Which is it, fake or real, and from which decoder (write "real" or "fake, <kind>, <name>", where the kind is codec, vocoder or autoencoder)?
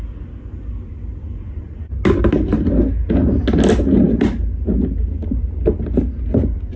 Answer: real